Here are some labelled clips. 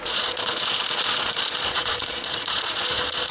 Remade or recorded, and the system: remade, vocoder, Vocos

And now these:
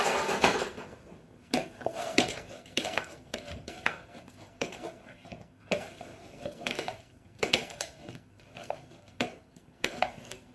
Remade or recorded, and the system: remade, codec, SNAC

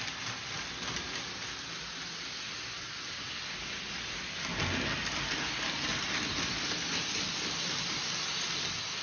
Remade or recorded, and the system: recorded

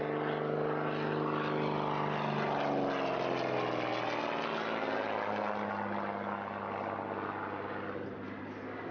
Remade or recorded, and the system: recorded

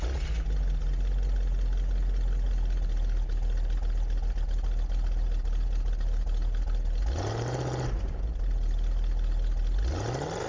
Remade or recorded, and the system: recorded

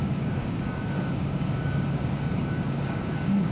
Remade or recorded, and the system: remade, codec, DAC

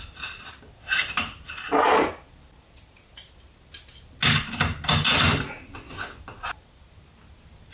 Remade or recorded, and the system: recorded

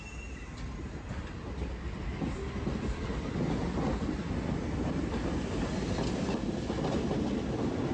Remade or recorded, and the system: recorded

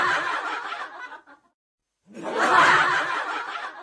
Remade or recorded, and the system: recorded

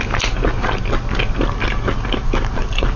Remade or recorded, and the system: recorded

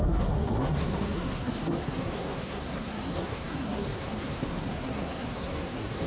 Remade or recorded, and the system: remade, codec, SNAC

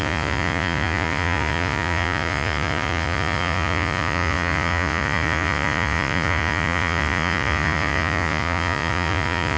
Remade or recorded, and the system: remade, vocoder, Vocos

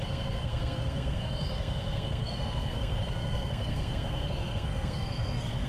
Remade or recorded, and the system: remade, codec, SNAC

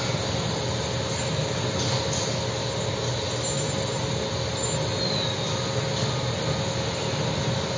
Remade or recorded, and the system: recorded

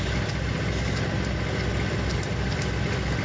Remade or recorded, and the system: recorded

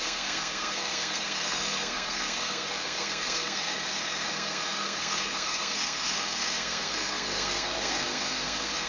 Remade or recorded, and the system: remade, codec, SNAC